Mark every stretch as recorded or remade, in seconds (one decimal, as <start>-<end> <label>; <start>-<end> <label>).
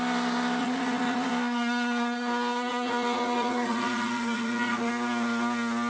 0.0-0.6 recorded; 0.6-1.3 remade; 1.3-2.7 recorded; 2.7-4.9 remade; 4.9-5.9 recorded